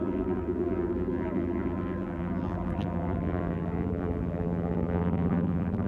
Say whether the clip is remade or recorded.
remade